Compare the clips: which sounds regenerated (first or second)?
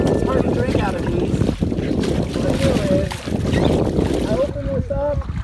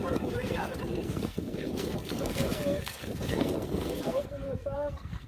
second